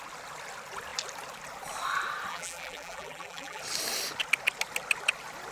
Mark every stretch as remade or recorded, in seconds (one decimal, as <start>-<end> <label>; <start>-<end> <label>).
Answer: 0.0-2.3 recorded; 2.3-3.6 remade; 3.6-5.5 recorded